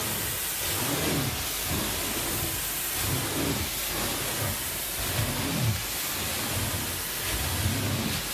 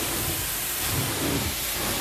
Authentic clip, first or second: first